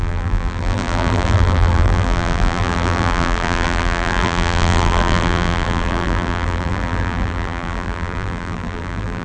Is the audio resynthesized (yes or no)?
yes